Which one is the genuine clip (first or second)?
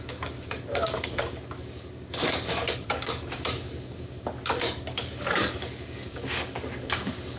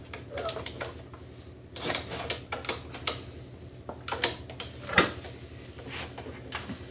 second